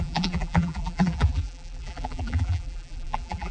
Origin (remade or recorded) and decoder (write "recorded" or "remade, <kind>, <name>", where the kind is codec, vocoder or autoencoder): remade, vocoder, BigVGAN v2